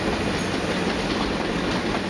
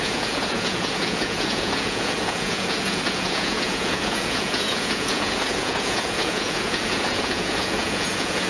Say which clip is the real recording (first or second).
first